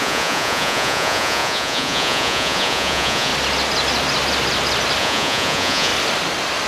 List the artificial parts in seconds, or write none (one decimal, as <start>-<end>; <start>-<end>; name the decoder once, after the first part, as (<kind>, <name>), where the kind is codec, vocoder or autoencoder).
0.0-3.3 (vocoder, Vocos); 5.0-5.9

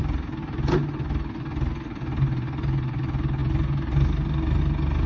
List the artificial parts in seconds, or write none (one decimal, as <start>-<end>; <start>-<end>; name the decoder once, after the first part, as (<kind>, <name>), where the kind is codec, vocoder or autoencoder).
none

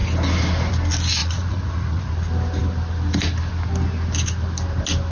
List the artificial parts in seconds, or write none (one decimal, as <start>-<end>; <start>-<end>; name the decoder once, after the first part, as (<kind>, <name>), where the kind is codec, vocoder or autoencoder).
1.2-2.1 (vocoder, Vocos)